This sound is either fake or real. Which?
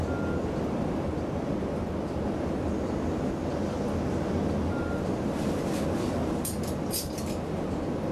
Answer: real